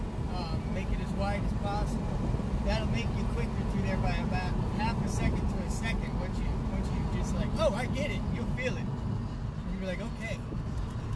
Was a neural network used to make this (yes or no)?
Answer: no